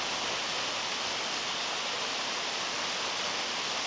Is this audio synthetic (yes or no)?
no